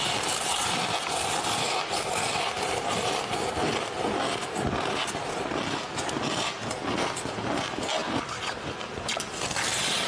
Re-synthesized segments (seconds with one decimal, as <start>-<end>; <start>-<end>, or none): none